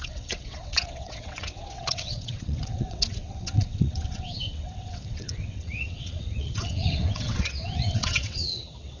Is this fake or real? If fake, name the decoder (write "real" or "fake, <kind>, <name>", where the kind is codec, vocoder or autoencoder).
fake, vocoder, WaveNeXt